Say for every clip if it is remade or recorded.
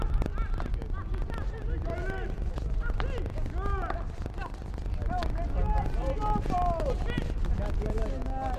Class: recorded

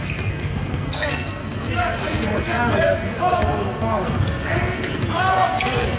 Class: remade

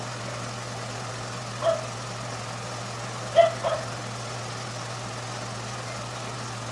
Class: recorded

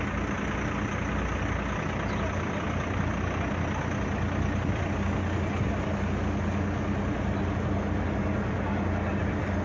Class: recorded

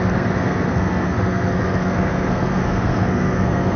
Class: remade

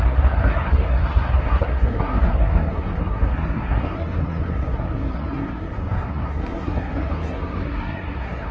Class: remade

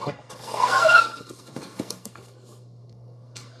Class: remade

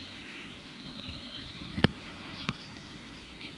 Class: remade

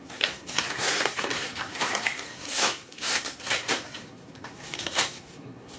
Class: remade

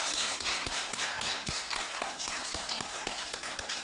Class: remade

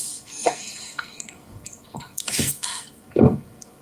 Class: remade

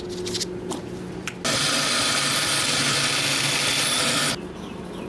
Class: recorded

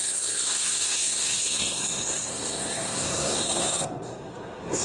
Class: remade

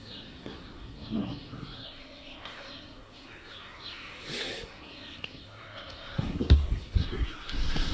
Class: remade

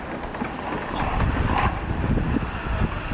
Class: recorded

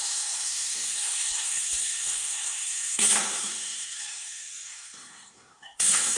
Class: remade